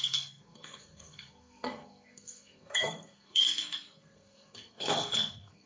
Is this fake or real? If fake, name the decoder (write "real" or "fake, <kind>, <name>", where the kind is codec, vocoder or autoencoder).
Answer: fake, codec, SNAC